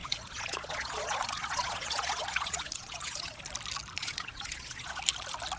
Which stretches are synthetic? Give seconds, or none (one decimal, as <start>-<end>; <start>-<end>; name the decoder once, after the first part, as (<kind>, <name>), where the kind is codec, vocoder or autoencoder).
0.0-3.4 (vocoder, Vocos); 4.0-5.0